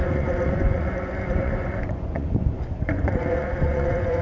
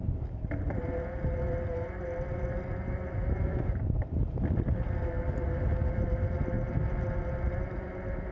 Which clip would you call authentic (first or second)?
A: second